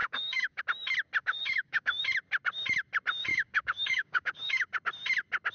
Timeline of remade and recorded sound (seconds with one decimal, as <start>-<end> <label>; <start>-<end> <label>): 0.0-0.6 remade; 0.6-1.2 recorded; 1.2-2.0 remade; 2.0-3.3 recorded; 3.3-4.7 remade; 4.7-5.5 recorded

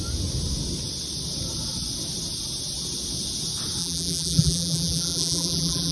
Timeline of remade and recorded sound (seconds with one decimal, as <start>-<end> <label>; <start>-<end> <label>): 0.0-3.8 recorded; 3.8-5.9 remade

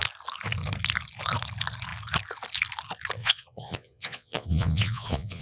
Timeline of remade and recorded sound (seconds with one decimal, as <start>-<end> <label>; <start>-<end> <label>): 0.0-3.2 recorded; 3.2-5.4 remade

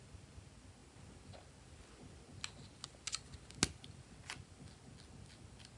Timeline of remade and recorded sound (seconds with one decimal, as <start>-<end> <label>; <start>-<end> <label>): 0.0-5.8 recorded

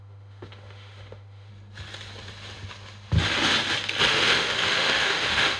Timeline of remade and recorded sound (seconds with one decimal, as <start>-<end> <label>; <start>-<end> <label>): 0.0-1.5 remade; 1.5-4.1 recorded; 4.1-5.6 remade

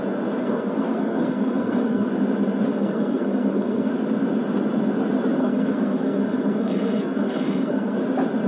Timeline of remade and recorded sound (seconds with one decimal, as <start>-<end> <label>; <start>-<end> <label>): 0.0-0.4 recorded; 0.4-2.1 remade; 2.1-2.7 recorded; 2.7-3.9 remade; 3.9-5.4 recorded; 5.4-8.0 remade; 8.0-8.5 recorded

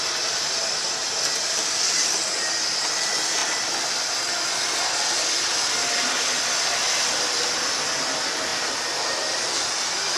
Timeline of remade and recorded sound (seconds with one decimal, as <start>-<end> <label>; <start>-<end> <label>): 0.0-10.2 recorded

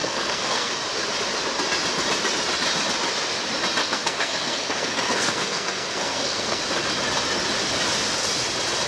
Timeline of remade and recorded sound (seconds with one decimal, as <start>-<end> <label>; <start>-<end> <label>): 0.0-0.7 remade; 0.7-3.8 recorded; 3.8-6.6 remade; 6.6-8.9 recorded